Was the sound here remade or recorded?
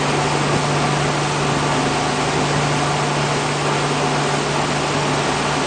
recorded